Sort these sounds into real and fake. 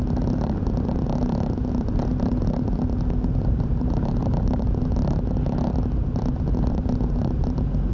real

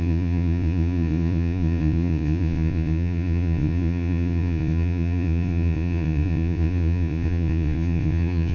fake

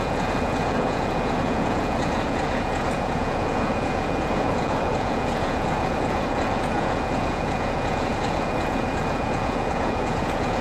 fake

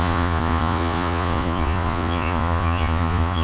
fake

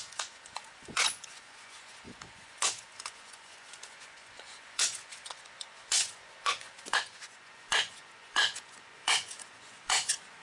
fake